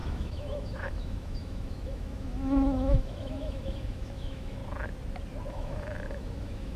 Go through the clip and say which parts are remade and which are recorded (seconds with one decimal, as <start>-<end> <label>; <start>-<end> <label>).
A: 0.0-4.6 remade; 4.6-5.5 recorded; 5.5-6.8 remade